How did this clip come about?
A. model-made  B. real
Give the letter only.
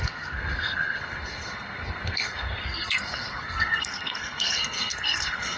A